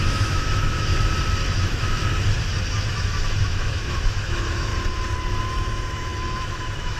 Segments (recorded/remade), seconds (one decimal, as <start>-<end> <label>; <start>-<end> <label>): 0.0-0.9 remade; 0.9-1.6 recorded; 1.6-2.0 remade; 2.0-2.9 recorded; 2.9-4.7 remade; 4.7-5.4 recorded; 5.4-7.0 remade